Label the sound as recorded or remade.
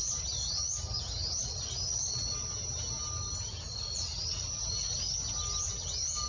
recorded